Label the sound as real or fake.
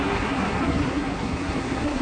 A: fake